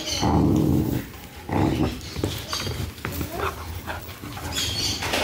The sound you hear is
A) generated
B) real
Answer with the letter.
B